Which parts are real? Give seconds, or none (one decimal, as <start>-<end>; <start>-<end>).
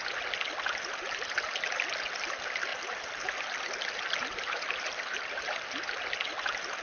0.0-6.8